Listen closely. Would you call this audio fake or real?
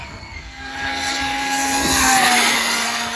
fake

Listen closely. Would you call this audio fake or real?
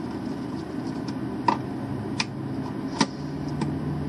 real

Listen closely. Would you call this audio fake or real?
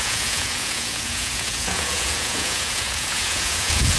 fake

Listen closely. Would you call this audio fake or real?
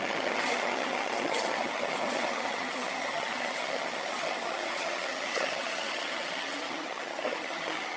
fake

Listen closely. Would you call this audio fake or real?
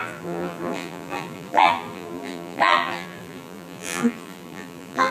fake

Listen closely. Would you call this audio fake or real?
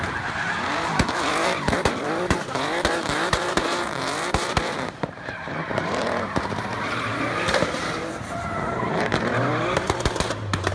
fake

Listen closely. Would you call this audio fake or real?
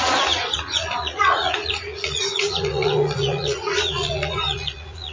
fake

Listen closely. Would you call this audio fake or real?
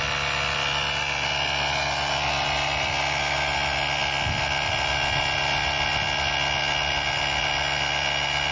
real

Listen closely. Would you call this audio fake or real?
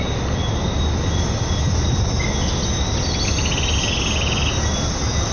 real